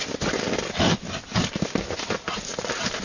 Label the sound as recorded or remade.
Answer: recorded